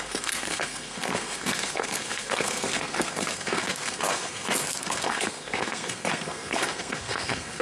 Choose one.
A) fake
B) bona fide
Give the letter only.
A